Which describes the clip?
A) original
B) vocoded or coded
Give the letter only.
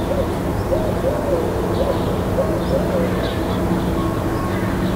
A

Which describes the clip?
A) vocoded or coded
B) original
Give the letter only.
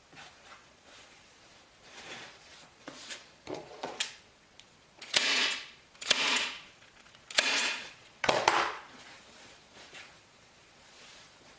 A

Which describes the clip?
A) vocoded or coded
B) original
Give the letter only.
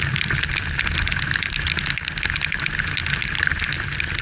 B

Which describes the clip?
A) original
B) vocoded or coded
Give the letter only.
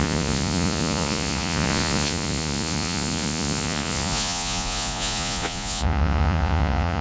B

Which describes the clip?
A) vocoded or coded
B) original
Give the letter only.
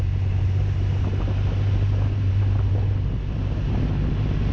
B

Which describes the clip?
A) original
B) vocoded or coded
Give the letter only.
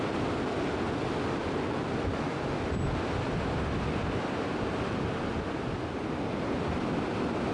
A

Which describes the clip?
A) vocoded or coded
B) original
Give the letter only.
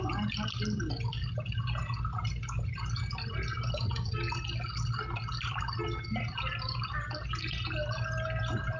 B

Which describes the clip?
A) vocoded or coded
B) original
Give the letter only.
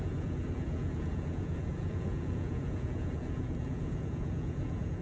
A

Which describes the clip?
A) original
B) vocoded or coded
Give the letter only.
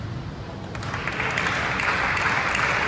A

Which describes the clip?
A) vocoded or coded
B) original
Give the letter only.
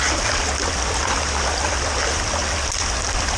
B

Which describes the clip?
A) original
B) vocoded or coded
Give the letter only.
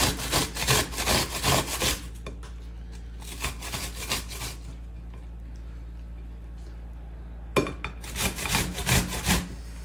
A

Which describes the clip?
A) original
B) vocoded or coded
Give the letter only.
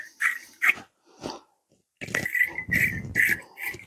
A